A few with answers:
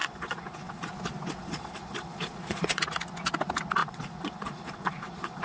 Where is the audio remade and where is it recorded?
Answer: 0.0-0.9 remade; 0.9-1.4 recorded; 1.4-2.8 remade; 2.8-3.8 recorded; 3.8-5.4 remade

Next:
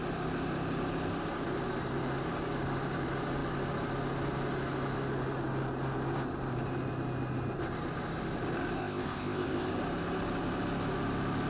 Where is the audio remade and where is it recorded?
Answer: 0.0-8.8 recorded; 8.8-9.7 remade; 9.7-11.5 recorded

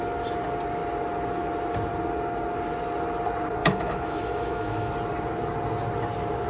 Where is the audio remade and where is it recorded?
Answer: 0.0-3.6 recorded; 3.6-4.9 remade; 4.9-6.5 recorded

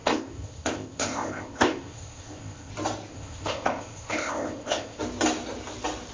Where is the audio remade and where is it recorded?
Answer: 0.0-2.7 remade; 2.7-3.1 recorded; 3.1-5.0 remade; 5.0-6.1 recorded

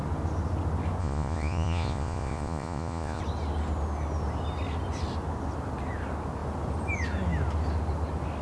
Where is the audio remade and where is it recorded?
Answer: 0.0-1.0 recorded; 1.0-3.2 remade; 3.2-8.4 recorded

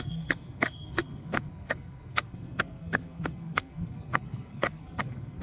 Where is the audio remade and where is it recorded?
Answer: 0.0-5.4 remade